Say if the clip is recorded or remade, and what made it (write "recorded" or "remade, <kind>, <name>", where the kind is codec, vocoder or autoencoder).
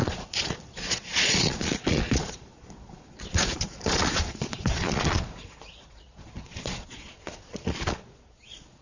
remade, vocoder, Vocos